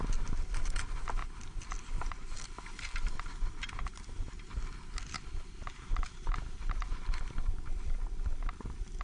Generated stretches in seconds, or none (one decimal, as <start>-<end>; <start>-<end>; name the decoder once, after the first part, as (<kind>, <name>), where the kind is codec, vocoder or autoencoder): 1.2-2.7 (vocoder, BigVGAN v2); 6.6-9.0